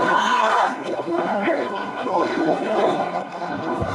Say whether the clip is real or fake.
fake